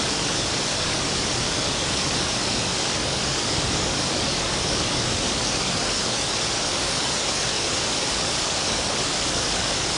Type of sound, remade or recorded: remade